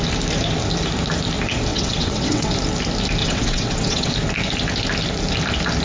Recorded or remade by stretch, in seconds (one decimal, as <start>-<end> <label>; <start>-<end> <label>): 0.0-1.7 recorded; 1.7-2.5 remade; 2.5-3.2 recorded; 3.2-4.1 remade; 4.1-5.8 recorded